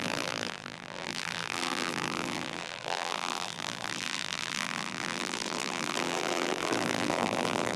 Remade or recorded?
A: remade